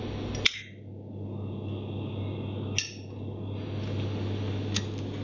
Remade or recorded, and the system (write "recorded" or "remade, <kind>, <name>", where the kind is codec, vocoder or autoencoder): recorded